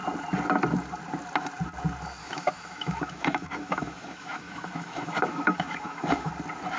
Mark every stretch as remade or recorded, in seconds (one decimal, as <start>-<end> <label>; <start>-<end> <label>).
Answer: 0.0-2.2 recorded; 2.2-6.3 remade; 6.3-6.8 recorded